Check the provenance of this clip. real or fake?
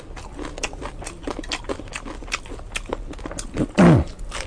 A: real